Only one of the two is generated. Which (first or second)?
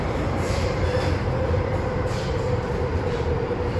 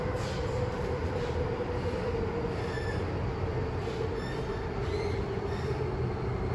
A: first